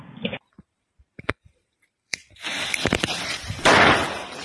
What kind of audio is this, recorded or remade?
remade